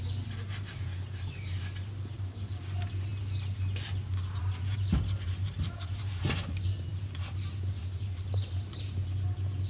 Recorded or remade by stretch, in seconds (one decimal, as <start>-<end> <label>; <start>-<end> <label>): 0.0-9.7 recorded